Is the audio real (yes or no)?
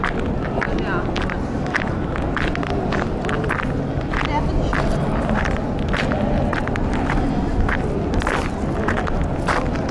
yes